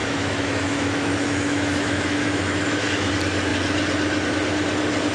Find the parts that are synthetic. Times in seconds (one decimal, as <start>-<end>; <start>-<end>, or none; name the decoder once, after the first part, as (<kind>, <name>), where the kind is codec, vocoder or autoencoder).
0.0-3.1 (autoencoder, DAC-VAE)